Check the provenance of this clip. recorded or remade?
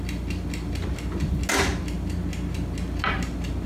recorded